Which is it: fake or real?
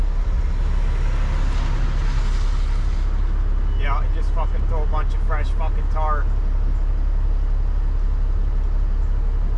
real